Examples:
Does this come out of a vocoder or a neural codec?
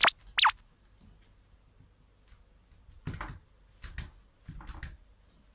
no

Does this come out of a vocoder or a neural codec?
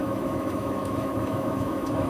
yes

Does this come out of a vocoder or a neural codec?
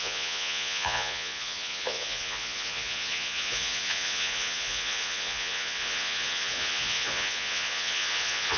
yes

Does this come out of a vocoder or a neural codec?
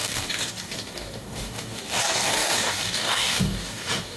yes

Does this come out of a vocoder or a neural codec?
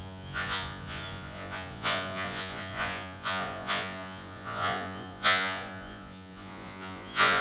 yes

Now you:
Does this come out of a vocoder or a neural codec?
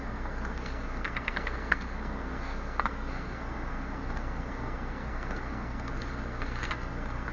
yes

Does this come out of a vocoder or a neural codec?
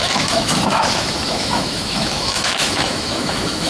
yes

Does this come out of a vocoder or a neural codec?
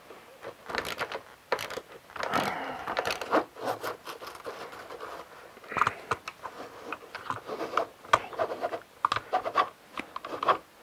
no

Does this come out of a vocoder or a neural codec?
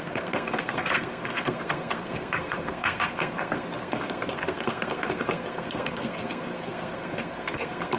yes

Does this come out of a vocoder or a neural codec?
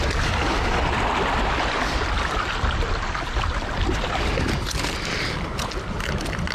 no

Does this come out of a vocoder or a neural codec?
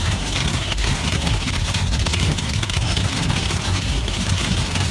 yes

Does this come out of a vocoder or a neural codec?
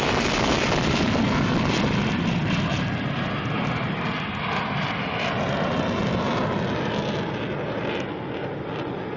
no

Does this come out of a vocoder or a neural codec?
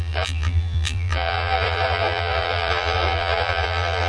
yes